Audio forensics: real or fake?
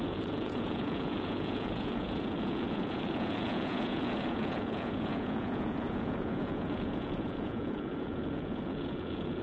fake